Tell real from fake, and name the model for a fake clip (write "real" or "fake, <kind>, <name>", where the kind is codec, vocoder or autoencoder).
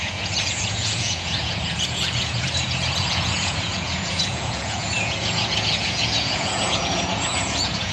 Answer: fake, vocoder, Vocos